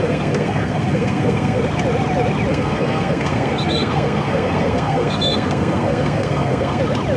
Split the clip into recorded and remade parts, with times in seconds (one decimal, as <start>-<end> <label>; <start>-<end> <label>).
0.0-1.6 remade; 1.6-2.5 recorded; 2.5-6.8 remade; 6.8-7.2 recorded